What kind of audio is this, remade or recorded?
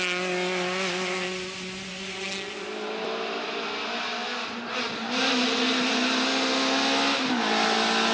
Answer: recorded